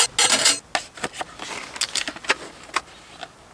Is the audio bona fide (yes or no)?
yes